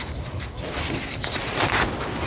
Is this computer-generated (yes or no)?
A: no